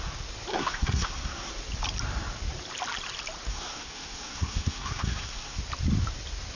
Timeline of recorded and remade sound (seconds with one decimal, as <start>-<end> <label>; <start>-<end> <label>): 0.0-0.5 recorded; 0.5-1.5 remade; 1.5-3.5 recorded; 3.5-5.6 remade; 5.6-6.6 recorded